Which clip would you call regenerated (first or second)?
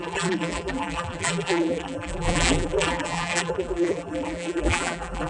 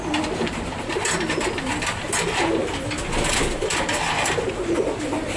first